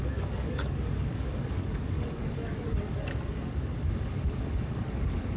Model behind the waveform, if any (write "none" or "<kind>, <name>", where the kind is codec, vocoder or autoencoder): codec, DAC